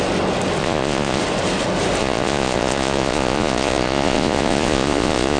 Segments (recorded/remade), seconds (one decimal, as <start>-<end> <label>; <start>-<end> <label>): 0.0-0.6 recorded; 0.6-1.2 remade; 1.2-2.0 recorded; 2.0-5.4 remade